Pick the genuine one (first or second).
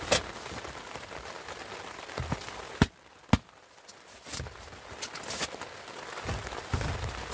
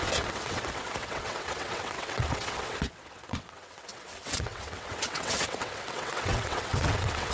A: first